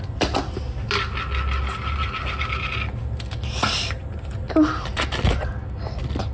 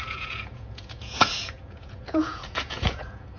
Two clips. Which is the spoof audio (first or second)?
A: second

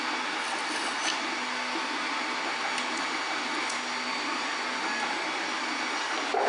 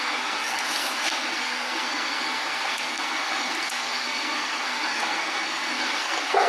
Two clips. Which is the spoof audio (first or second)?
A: second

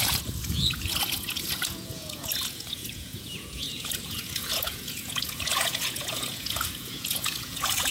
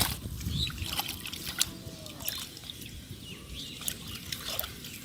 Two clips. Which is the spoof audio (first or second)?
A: first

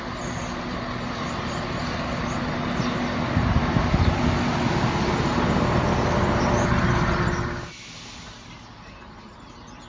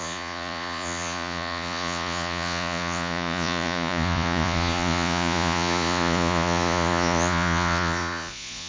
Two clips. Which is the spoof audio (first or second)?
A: second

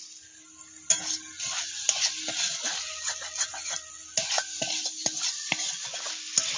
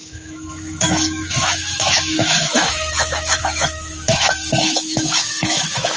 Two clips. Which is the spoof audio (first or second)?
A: second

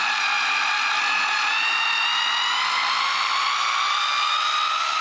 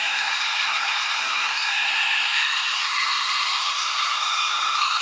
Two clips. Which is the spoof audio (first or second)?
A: second